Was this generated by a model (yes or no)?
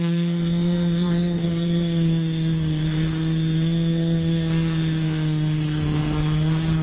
yes